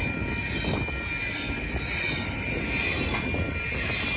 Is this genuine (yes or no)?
yes